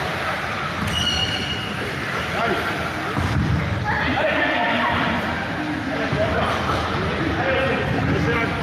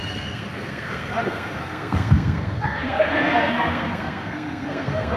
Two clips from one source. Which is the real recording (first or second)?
first